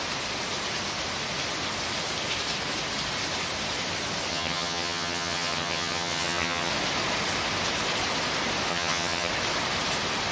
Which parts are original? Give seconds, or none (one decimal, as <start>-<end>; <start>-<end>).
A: 0.0-4.3; 6.7-8.7; 9.3-10.3